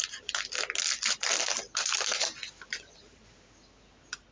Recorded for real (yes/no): yes